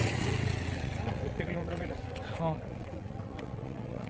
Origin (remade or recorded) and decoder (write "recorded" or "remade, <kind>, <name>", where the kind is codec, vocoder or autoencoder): remade, vocoder, WaveNeXt